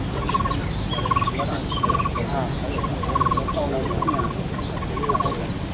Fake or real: real